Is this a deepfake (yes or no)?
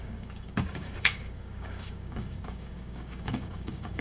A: yes